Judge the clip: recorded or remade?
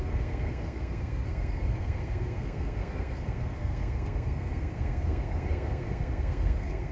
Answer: remade